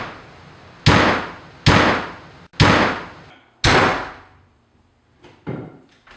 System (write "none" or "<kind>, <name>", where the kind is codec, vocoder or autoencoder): none